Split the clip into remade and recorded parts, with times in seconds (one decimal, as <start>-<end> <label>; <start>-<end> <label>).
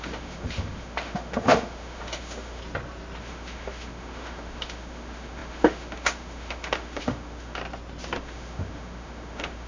0.0-2.6 remade; 2.6-3.2 recorded; 3.2-7.6 remade; 7.6-8.2 recorded; 8.2-9.7 remade